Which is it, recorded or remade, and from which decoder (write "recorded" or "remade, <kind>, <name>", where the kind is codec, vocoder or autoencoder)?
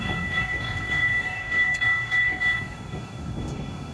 remade, codec, DAC